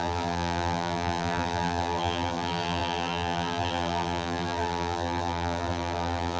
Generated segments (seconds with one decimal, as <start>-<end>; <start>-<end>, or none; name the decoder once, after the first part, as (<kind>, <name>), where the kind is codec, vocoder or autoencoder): 0.0-6.4 (vocoder, BigVGAN v2)